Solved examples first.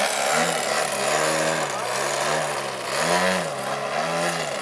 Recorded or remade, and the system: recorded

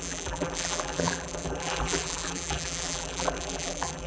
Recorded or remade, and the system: remade, vocoder, BigVGAN v2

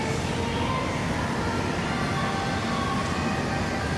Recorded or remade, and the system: recorded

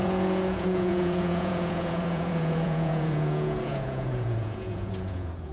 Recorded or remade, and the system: remade, vocoder, Vocos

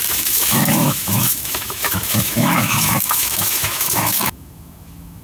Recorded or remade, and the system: remade, autoencoder, DAC-VAE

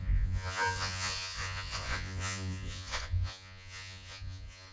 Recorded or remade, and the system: remade, vocoder, Vocos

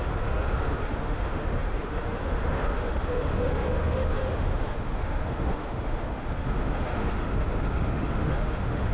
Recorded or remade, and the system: remade, autoencoder, DAC-VAE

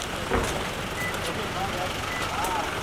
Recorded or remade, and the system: recorded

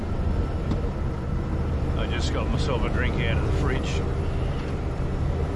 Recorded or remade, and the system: recorded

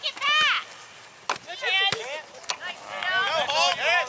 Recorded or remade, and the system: recorded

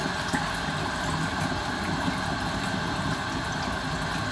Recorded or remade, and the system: recorded